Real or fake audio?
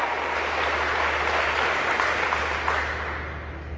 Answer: real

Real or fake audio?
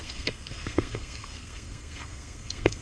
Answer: fake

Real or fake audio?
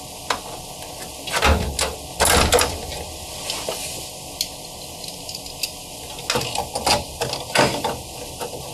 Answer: real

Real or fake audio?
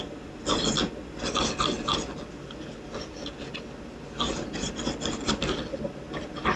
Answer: real